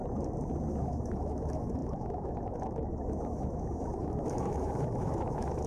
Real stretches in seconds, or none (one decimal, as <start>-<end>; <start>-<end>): 0.0-0.7